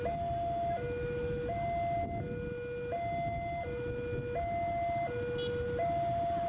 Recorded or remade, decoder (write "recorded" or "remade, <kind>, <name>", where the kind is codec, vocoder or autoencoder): recorded